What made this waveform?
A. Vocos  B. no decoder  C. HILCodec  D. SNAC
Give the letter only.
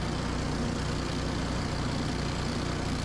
B